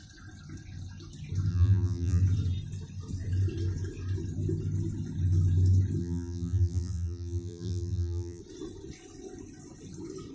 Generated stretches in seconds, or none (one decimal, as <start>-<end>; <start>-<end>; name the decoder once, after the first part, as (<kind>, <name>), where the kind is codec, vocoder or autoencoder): 1.5-2.2 (vocoder, BigVGAN v2); 6.0-8.4